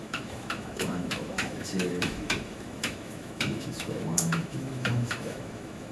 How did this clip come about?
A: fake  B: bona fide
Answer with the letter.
A